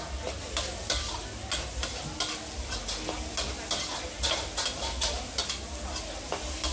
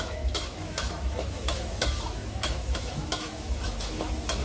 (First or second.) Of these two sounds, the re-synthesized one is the second